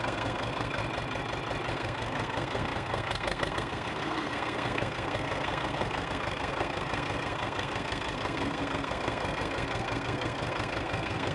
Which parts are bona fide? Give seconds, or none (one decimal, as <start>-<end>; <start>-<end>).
0.8-1.7